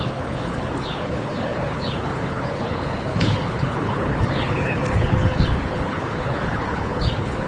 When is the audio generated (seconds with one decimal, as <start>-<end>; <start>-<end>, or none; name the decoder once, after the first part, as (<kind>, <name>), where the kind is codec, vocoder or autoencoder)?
0.0-7.5 (codec, HILCodec)